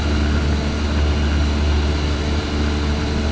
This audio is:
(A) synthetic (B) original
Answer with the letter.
B